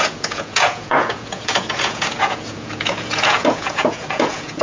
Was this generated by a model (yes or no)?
yes